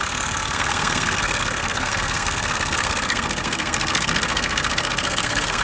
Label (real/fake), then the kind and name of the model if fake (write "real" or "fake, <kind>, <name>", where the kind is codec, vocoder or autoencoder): fake, codec, SNAC